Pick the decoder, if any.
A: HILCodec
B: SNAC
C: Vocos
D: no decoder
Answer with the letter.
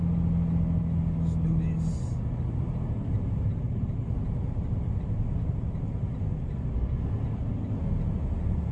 D